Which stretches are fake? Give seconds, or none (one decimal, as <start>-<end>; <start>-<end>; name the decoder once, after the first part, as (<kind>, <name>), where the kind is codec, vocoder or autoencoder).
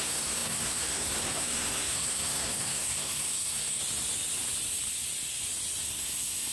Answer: 0.0-3.8 (codec, SNAC); 5.8-6.5